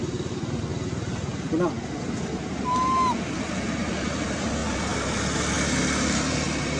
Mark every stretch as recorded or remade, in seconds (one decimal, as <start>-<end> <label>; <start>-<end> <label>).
0.0-6.8 recorded